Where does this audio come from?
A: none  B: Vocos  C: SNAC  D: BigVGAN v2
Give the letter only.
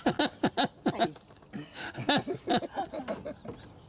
A